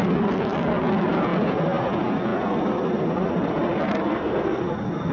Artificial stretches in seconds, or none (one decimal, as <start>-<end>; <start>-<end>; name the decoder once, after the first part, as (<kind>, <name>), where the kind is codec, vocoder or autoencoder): 4.1-4.6 (codec, SNAC)